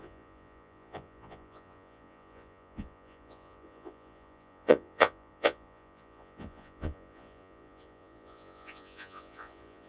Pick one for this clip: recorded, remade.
remade